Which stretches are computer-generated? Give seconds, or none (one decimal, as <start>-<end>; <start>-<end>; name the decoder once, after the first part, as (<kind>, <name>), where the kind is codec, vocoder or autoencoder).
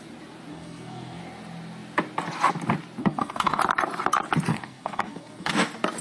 0.5-1.2 (codec, SNAC); 3.0-3.6; 4.5-5.5